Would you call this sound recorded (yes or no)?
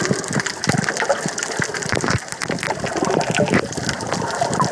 yes